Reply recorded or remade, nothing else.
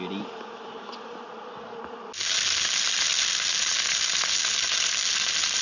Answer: recorded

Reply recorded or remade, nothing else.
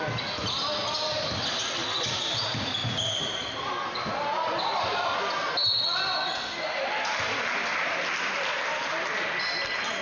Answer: recorded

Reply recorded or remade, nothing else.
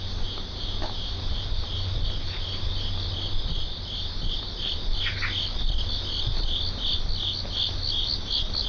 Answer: recorded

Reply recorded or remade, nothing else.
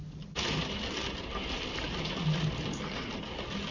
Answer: recorded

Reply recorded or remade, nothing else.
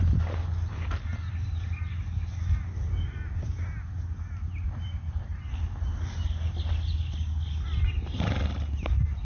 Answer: recorded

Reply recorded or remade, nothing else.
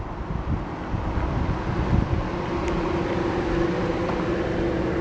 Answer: recorded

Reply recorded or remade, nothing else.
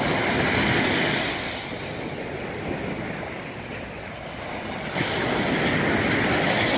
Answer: recorded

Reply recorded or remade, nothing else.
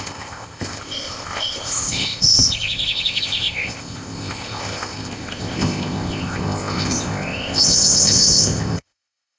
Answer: remade